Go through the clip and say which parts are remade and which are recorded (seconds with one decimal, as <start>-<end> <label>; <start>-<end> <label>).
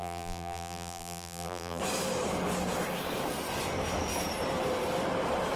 0.0-1.8 remade; 1.8-5.6 recorded